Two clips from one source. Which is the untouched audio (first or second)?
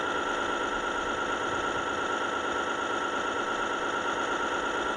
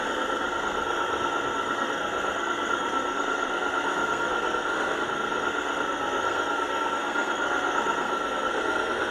first